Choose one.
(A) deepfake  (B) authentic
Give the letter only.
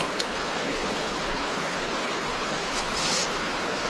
A